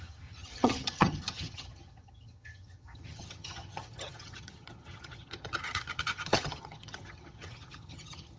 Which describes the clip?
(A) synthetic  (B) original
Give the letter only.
A